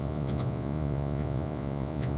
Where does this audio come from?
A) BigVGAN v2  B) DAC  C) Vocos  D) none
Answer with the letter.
C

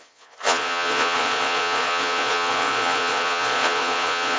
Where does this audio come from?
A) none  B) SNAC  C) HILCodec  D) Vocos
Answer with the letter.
D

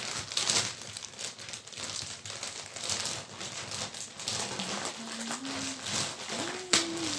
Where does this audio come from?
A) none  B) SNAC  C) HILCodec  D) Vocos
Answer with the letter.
A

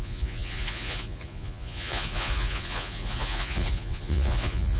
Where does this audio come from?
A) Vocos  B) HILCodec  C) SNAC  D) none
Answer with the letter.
A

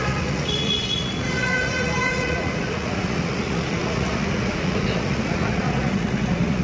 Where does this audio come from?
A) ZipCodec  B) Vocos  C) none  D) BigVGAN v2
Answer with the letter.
B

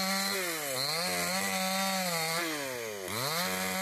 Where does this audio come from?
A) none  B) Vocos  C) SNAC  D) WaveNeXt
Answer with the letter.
A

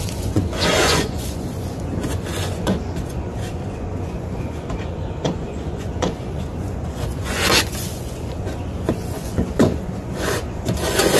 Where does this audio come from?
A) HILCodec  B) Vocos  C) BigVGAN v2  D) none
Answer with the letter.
B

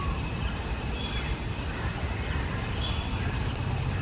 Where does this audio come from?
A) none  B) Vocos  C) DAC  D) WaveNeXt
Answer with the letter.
A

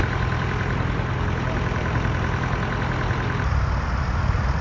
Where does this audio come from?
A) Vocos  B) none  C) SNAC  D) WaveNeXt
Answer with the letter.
B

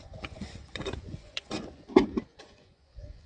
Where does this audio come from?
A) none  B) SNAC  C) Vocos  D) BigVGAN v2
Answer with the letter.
C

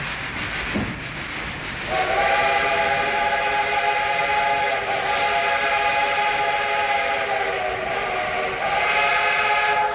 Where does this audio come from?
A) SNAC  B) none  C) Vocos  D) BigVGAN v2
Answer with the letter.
B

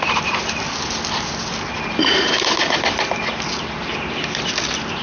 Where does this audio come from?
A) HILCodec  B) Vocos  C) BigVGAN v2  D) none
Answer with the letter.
D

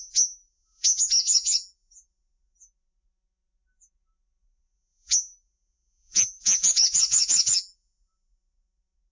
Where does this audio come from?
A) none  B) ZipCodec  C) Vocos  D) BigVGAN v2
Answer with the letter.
C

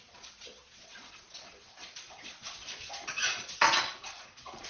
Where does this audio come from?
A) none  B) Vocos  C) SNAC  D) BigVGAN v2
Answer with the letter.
B